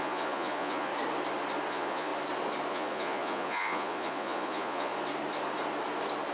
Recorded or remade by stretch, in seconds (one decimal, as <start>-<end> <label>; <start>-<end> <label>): 0.0-0.9 remade; 0.9-1.7 recorded; 1.7-2.1 remade; 2.1-2.7 recorded; 2.7-4.9 remade; 4.9-6.3 recorded